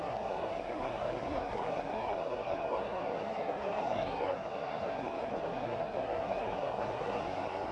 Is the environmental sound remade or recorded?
remade